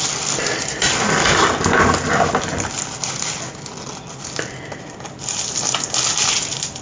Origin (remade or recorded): recorded